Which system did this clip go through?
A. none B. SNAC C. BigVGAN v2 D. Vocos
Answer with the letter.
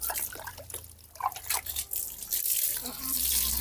A